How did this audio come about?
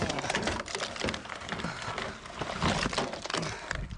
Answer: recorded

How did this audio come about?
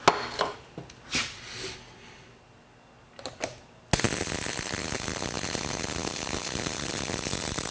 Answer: recorded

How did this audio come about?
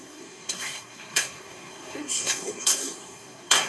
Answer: remade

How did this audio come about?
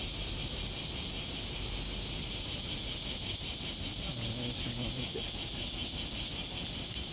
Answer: recorded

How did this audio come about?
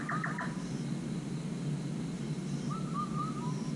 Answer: recorded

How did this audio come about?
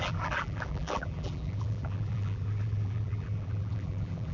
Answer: remade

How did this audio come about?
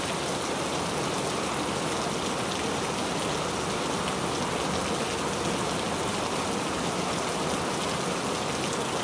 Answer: recorded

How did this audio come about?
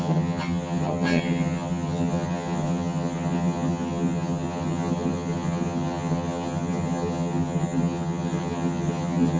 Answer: remade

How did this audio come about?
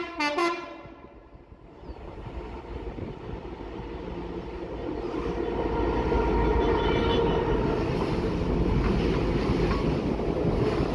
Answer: recorded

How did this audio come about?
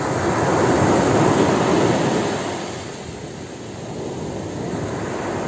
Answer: recorded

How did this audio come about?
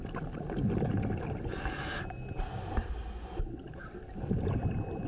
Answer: recorded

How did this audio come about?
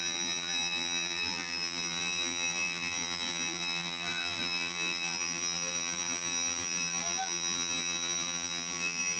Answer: remade